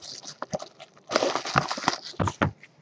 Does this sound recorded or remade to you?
recorded